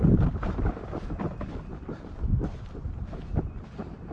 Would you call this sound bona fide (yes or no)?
yes